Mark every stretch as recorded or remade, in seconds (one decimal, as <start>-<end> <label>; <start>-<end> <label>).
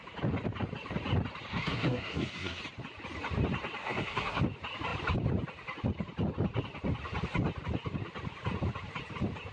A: 0.0-1.5 recorded; 1.5-2.6 remade; 2.6-3.8 recorded; 3.8-4.4 remade; 4.4-9.5 recorded